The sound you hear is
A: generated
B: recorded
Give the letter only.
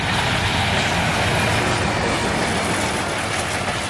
B